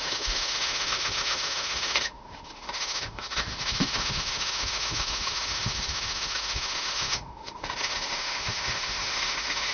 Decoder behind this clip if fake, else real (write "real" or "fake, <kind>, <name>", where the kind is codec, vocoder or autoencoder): fake, autoencoder, DAC-VAE